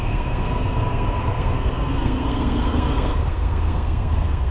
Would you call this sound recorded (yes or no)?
no